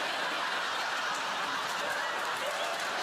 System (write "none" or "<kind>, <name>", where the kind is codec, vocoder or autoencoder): none